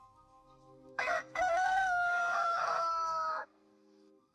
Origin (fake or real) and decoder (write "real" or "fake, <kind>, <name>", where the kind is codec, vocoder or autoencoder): fake, codec, SNAC